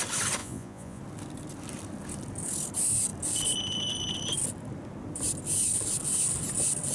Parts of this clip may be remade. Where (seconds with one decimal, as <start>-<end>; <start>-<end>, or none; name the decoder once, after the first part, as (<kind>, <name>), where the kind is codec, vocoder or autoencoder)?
0.4-1.0 (vocoder, Vocos)